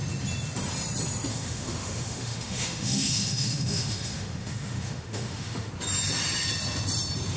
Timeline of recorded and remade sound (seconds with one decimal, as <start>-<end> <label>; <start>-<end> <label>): 0.0-1.3 recorded; 1.3-5.7 remade; 5.7-7.4 recorded